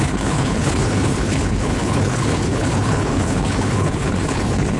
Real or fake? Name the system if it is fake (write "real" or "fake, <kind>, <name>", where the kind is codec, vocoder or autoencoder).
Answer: fake, codec, HILCodec